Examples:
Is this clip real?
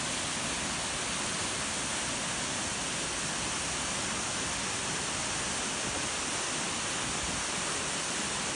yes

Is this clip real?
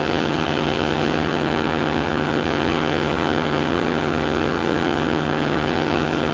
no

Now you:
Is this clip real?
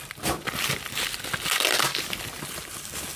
yes